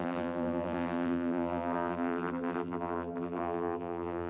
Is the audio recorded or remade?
remade